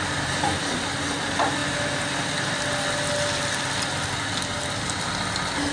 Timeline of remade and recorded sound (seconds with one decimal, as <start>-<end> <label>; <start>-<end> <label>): 0.0-5.7 recorded

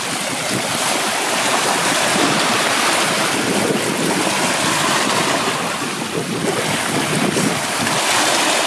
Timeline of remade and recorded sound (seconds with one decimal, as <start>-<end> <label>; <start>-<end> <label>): 0.0-8.7 recorded